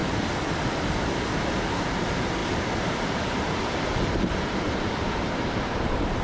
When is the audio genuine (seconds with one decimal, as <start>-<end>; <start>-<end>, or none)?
0.0-0.9